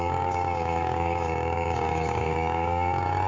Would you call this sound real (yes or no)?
no